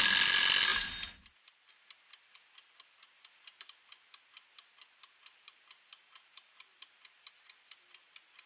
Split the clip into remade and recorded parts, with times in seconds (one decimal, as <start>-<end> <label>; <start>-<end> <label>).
0.0-8.5 recorded